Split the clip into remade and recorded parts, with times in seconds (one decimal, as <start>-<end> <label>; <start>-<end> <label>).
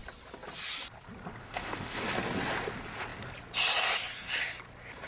0.0-1.4 recorded; 1.4-2.0 remade; 2.0-5.1 recorded